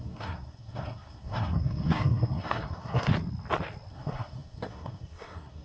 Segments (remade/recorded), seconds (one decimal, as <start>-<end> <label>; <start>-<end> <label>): 0.0-3.1 remade; 3.1-3.9 recorded; 3.9-5.6 remade